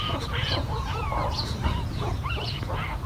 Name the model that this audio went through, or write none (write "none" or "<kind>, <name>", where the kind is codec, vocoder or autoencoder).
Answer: vocoder, Vocos